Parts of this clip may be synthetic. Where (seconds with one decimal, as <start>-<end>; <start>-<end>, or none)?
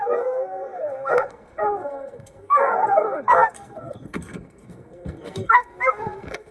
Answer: 0.0-6.5